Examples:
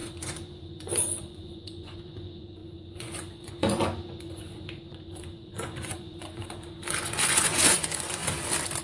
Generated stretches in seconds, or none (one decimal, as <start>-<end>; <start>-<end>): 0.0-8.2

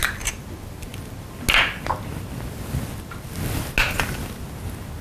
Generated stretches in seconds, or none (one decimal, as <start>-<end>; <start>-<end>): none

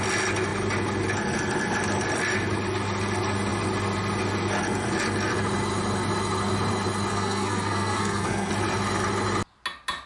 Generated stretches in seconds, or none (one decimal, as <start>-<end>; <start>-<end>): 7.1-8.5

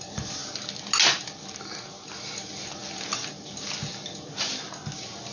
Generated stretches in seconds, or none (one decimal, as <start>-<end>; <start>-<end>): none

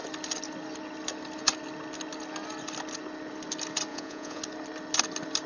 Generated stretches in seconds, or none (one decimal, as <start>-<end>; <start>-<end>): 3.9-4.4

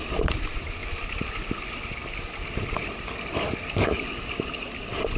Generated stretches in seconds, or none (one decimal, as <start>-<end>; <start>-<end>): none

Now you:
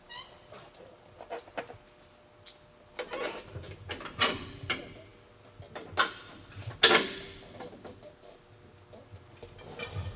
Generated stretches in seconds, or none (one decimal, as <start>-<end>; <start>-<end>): none

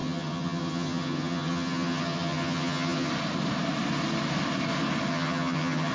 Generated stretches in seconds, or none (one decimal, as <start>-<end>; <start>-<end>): 0.0-3.1; 5.1-5.9